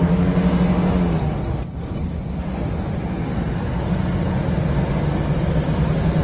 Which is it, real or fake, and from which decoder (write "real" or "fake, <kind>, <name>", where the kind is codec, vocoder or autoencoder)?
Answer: real